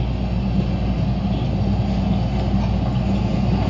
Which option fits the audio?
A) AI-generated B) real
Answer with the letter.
B